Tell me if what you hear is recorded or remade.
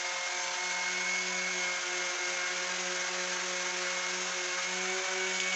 recorded